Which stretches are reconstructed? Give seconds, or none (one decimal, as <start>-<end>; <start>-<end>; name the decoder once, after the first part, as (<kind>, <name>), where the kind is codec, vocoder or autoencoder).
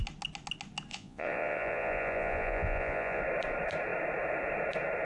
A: 0.9-3.2 (vocoder, Vocos)